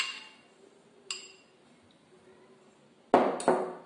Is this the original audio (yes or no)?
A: yes